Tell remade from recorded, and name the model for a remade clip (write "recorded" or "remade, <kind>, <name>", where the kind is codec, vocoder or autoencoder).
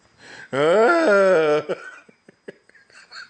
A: recorded